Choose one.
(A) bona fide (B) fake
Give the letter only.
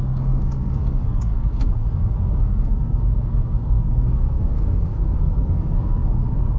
B